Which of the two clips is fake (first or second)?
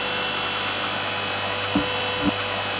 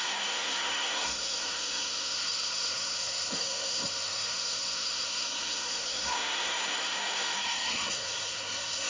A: second